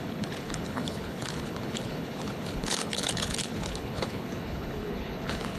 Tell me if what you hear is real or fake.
fake